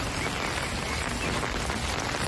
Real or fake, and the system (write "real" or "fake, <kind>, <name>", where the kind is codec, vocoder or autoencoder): real